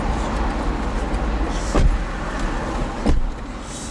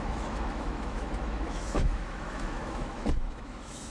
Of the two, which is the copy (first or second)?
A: second